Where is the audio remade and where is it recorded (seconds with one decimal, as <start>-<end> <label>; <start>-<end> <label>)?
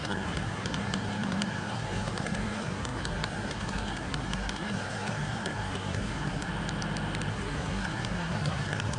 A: 0.0-6.5 remade; 6.5-7.3 recorded; 7.3-9.0 remade